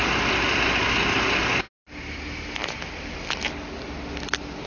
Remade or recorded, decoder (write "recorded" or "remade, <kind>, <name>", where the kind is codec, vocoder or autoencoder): recorded